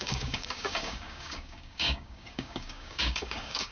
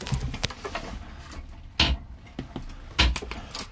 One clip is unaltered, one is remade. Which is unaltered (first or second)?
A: second